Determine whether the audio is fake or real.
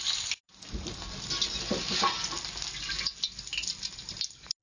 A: real